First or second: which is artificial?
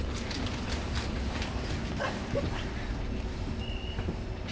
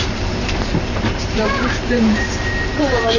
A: second